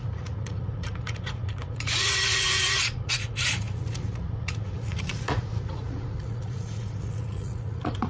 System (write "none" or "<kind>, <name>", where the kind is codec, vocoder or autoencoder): vocoder, Vocos